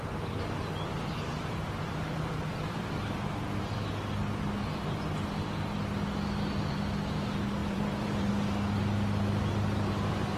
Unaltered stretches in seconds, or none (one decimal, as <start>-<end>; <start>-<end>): 0.0-1.3; 3.1-7.6; 8.3-10.4